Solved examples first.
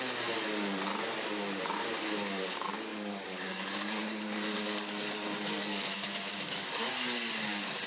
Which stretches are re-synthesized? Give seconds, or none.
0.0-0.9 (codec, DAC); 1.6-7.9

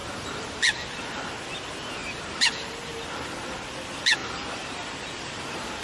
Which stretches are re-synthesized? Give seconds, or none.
0.0-0.6 (vocoder, BigVGAN v2); 2.0-2.7; 4.2-5.8

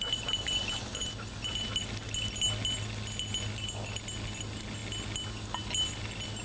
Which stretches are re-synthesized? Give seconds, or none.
none

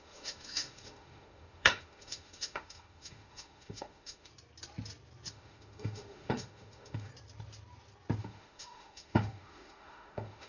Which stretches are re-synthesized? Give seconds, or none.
0.0-4.3 (autoencoder, DAC-VAE); 5.3-7.1; 8.2-10.5